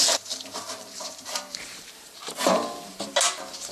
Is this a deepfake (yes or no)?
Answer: yes